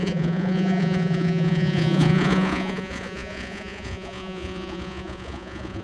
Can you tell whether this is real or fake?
fake